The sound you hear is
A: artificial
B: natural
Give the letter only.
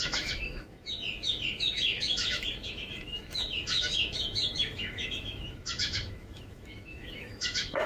A